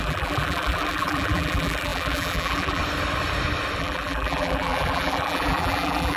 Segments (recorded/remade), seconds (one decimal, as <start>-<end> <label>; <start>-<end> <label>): 0.0-2.8 remade; 2.8-3.8 recorded; 3.8-6.2 remade